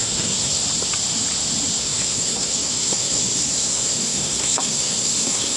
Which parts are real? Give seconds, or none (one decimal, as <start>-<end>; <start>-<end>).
0.6-1.8